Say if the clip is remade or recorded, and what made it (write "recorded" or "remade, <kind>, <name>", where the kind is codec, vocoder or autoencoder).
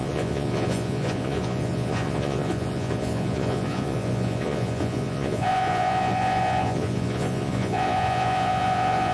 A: remade, vocoder, Vocos